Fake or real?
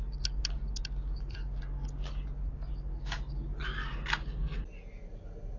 real